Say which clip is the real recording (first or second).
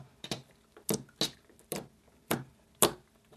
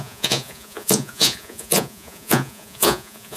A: first